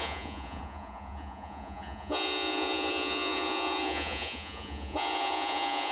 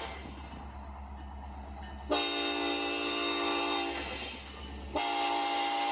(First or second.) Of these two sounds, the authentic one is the second